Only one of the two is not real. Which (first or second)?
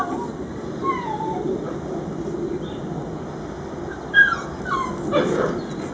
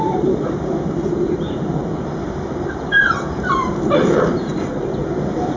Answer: second